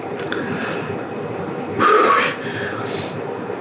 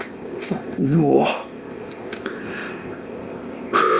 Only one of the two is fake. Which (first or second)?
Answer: second